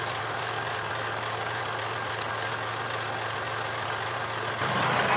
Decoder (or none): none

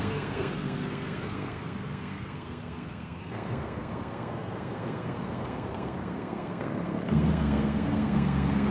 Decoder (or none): codec, SNAC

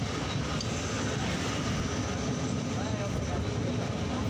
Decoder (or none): none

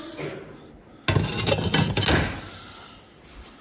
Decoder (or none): none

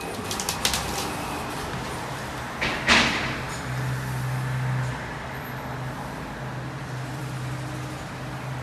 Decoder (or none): none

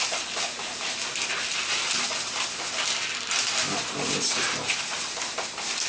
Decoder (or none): none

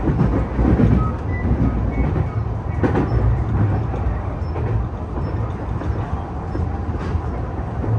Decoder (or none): none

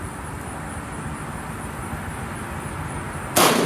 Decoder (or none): none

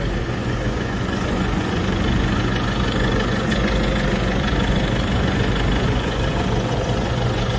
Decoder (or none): vocoder, Vocos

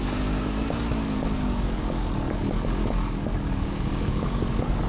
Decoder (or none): codec, DAC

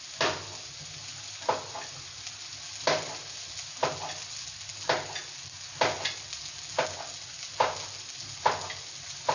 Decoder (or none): none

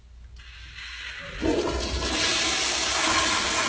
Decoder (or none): none